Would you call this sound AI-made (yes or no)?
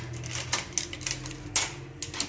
no